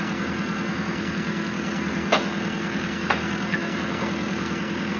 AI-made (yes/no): yes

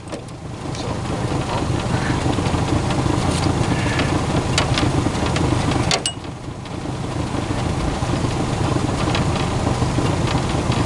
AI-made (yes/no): no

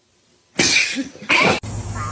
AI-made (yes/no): no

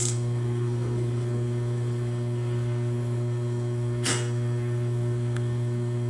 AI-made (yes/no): yes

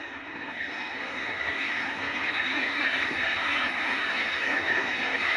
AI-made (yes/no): yes